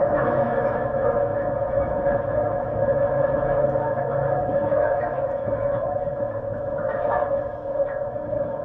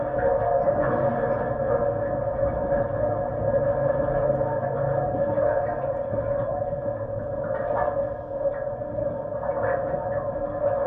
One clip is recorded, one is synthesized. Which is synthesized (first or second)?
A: first